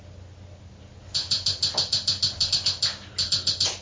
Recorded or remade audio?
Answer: recorded